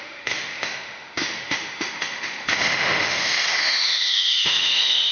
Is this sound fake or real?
fake